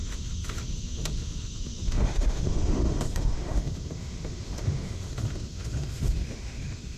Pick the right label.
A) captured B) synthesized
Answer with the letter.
B